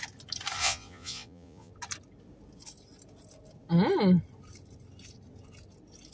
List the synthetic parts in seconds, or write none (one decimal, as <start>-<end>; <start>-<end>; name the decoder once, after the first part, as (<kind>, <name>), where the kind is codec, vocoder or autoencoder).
0.6-1.7 (vocoder, Vocos)